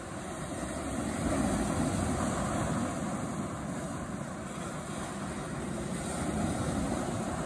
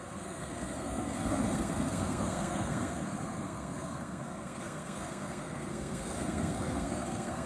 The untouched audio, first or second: first